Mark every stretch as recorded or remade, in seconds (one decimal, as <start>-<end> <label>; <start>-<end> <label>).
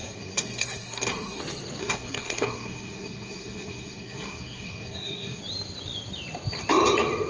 0.0-1.4 remade; 1.4-1.8 recorded; 1.8-5.4 remade; 5.4-7.3 recorded